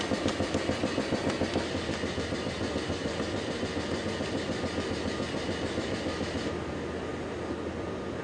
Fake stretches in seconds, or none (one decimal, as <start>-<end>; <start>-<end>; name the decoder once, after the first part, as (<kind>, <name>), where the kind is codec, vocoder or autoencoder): none